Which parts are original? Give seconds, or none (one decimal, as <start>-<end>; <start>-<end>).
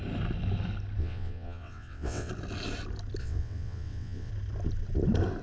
0.0-1.0; 2.3-3.2; 4.3-5.4